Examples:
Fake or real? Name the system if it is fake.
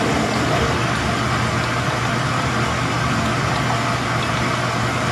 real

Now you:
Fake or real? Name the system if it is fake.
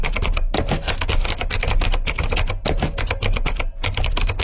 real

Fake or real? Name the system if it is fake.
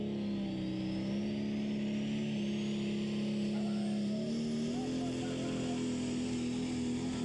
real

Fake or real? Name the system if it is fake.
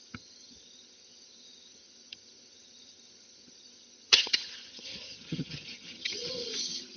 fake, vocoder, HiFi-GAN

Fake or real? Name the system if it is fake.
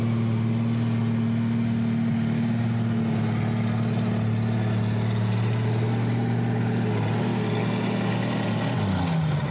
real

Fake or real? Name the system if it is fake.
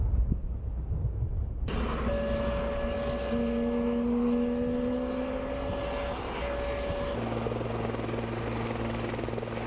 real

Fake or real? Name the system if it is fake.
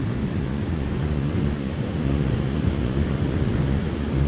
fake, vocoder, Vocos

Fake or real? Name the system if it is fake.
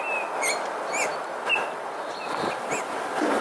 real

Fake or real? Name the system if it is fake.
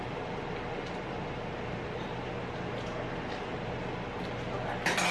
real